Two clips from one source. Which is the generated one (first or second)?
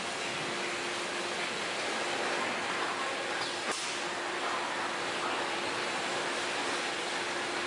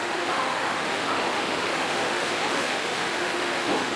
second